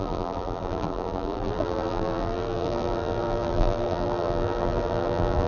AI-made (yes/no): yes